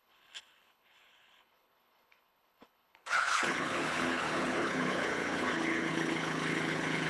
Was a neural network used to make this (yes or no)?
yes